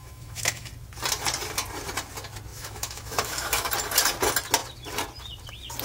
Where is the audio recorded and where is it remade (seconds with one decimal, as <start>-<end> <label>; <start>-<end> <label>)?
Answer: 0.0-0.7 remade; 0.7-2.5 recorded; 2.5-3.7 remade; 3.7-5.8 recorded